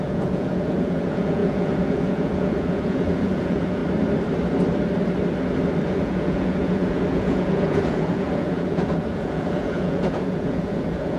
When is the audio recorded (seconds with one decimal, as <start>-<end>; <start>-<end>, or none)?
3.8-5.9